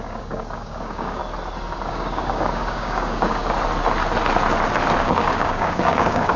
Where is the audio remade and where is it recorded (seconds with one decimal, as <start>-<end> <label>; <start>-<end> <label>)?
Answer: 0.0-1.2 remade; 1.2-1.9 recorded; 1.9-3.4 remade; 3.4-5.0 recorded; 5.0-6.4 remade